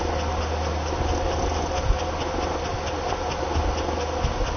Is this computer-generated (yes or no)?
no